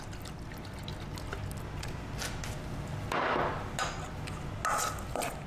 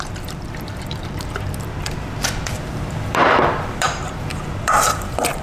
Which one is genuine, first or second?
first